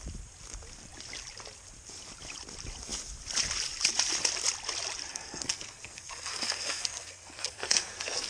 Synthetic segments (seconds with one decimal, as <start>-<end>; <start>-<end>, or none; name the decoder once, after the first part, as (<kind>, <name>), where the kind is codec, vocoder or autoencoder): 5.1-8.3 (codec, SNAC)